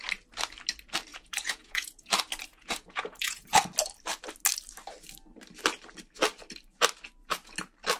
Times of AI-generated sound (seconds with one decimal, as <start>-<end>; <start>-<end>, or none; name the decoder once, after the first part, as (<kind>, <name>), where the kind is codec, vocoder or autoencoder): 1.1-2.1 (vocoder, Vocos); 2.5-3.6